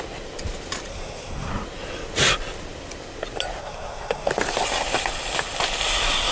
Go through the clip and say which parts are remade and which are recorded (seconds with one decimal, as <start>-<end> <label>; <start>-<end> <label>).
0.0-0.9 recorded; 0.9-1.5 remade; 1.5-3.6 recorded; 3.6-4.3 remade; 4.3-6.3 recorded